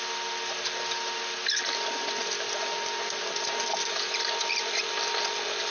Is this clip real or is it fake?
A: real